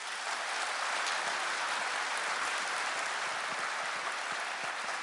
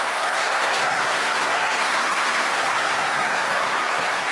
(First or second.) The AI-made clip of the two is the second